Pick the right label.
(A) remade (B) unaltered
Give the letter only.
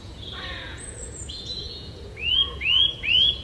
A